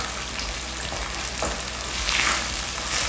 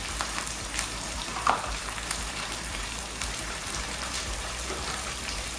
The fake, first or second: second